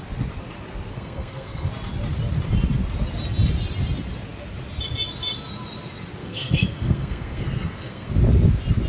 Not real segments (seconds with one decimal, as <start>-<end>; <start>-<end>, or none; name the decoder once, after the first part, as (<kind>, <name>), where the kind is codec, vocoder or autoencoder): 0.9-1.7 (codec, SNAC); 6.2-8.1